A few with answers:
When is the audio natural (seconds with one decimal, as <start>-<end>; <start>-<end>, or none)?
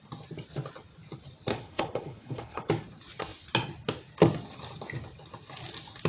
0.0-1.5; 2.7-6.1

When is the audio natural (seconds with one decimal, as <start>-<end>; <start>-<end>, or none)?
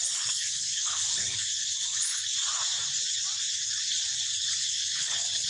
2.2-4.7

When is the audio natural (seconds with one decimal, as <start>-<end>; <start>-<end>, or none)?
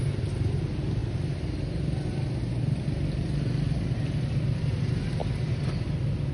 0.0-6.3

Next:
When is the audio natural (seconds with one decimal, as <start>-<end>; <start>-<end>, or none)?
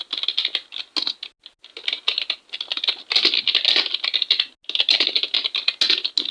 0.0-6.3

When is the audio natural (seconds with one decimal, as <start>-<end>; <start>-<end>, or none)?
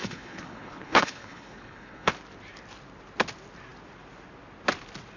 2.1-5.2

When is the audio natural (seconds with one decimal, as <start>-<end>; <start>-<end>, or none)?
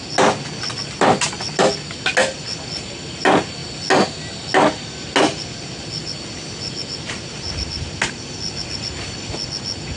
0.0-10.0